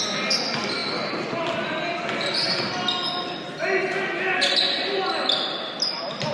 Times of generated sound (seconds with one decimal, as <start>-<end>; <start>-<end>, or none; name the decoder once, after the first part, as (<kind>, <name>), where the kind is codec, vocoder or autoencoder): none